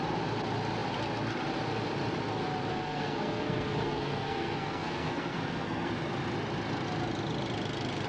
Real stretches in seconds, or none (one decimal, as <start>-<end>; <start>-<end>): 0.0-2.7; 5.9-8.1